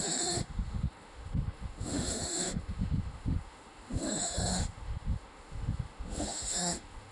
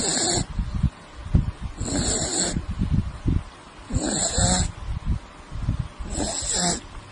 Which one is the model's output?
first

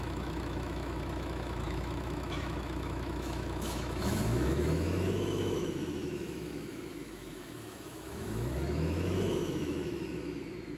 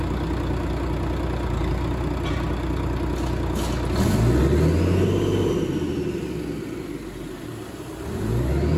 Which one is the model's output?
first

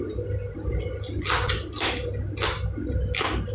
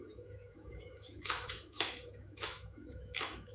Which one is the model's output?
second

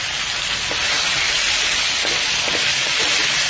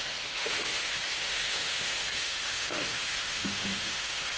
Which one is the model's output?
second